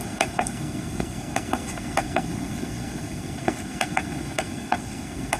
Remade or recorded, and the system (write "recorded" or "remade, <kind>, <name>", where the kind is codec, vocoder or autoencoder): remade, codec, SNAC